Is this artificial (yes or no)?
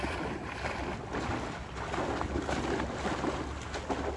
no